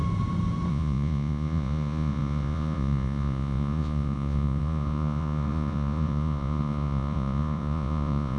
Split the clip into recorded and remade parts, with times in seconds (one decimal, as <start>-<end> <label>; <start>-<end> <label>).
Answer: 0.0-0.7 recorded; 0.7-8.4 remade